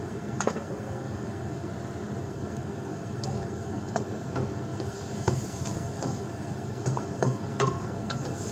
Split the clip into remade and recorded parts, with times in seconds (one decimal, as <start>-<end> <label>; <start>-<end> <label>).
0.0-1.7 remade; 1.7-2.2 recorded; 2.2-8.5 remade